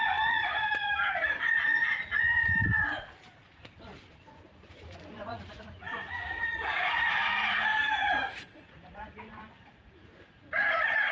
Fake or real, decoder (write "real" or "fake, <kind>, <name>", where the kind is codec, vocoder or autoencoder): fake, vocoder, Vocos